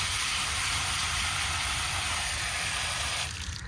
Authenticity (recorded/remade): recorded